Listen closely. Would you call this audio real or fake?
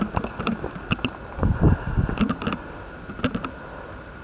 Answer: real